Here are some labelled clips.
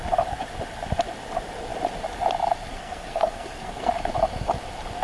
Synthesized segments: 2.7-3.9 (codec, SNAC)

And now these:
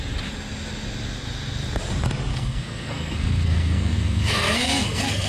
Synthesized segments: 2.3-5.3 (codec, SNAC)

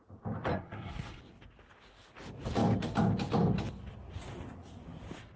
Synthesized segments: 0.5-1.2 (codec, SNAC)